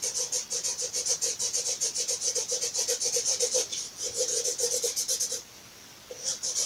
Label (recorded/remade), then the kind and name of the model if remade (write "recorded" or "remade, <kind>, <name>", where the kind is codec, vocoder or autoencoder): recorded